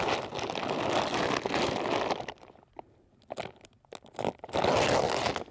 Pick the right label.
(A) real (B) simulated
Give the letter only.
A